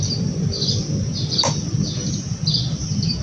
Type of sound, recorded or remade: recorded